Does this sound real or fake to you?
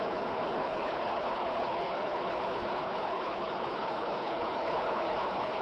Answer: fake